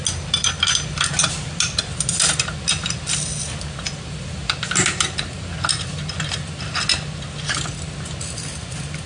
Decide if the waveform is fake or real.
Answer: real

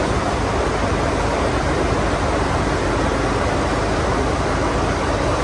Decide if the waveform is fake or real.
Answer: real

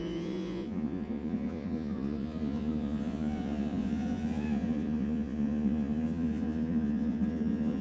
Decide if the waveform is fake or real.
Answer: fake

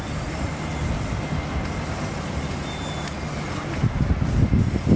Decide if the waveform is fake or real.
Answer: real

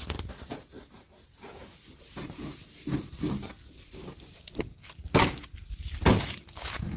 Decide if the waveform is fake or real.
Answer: real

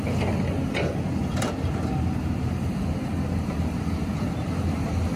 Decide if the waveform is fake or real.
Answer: real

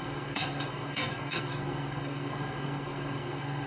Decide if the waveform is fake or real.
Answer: fake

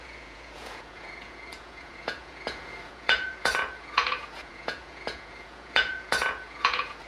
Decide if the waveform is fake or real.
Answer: fake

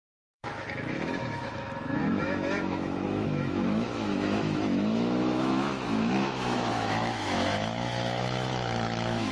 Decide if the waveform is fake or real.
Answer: fake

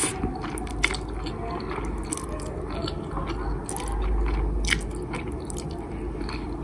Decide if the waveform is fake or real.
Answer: real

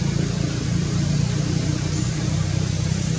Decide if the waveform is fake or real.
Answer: real